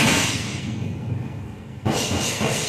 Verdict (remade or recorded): remade